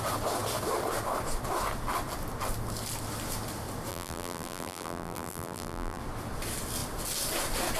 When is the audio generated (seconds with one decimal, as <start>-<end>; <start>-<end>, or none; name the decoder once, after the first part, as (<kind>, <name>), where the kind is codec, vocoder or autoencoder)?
3.9-6.0 (vocoder, BigVGAN v2)